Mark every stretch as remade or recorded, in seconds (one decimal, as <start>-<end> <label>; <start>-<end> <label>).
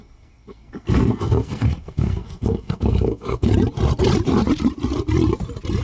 0.0-3.5 remade; 3.5-5.8 recorded